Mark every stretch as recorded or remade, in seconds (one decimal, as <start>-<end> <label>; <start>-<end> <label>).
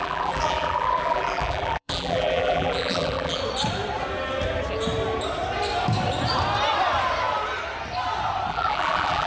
0.0-3.4 remade; 3.4-8.5 recorded; 8.5-9.3 remade